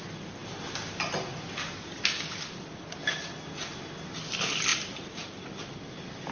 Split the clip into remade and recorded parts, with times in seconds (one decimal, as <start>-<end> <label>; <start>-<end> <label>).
0.0-6.3 recorded